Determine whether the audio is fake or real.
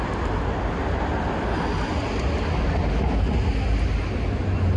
real